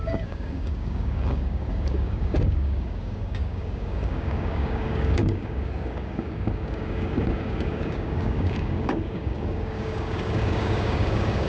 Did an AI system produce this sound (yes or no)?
yes